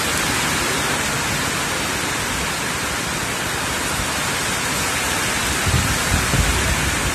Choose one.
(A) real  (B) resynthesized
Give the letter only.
A